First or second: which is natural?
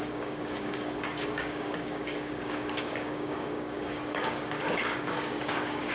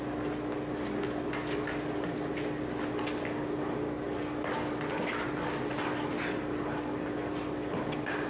second